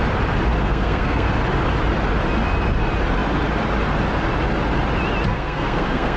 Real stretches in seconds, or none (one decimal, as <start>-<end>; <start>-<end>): 0.0-0.5; 1.3-5.3